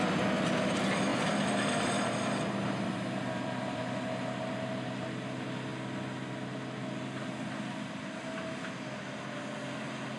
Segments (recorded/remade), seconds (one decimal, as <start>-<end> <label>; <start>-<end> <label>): 0.0-1.1 recorded; 1.1-3.8 remade; 3.8-10.2 recorded